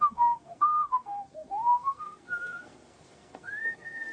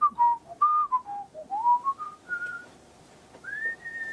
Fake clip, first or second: first